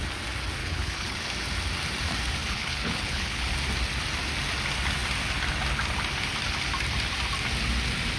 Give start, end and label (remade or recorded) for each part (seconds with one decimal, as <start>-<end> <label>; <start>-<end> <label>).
0.0-0.6 recorded; 0.6-1.2 remade; 1.2-2.4 recorded; 2.4-3.5 remade; 3.5-8.2 recorded